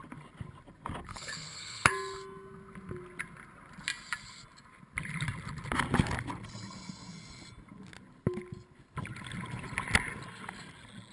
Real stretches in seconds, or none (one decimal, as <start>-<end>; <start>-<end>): 0.0-1.1; 1.9-11.1